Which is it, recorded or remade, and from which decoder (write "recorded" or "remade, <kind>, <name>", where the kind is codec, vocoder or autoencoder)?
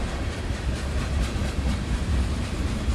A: remade, vocoder, BigVGAN v2